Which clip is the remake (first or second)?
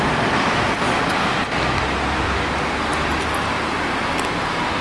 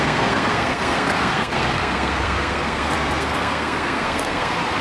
second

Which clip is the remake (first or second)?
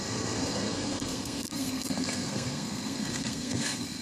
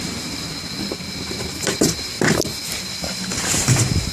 first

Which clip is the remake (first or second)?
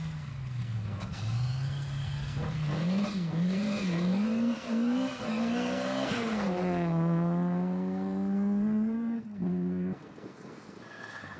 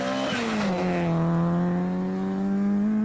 first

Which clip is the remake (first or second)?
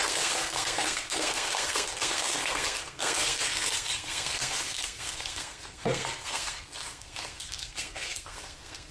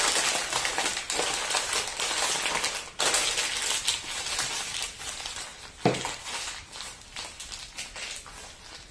first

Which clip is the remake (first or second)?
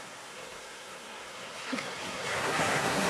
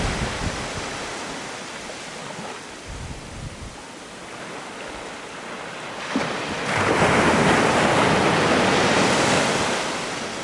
first